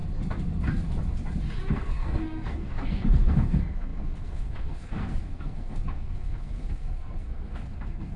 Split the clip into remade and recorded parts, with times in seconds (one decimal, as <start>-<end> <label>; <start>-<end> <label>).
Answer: 0.0-1.7 recorded; 1.7-8.2 remade